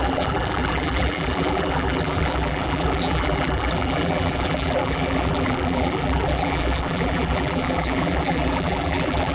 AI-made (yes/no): yes